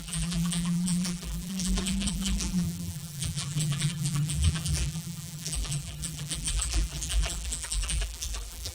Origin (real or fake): fake